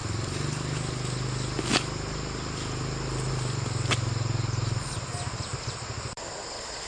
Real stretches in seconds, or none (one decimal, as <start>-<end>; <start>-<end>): 0.0-6.9